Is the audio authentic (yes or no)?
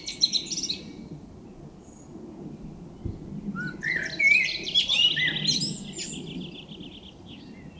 yes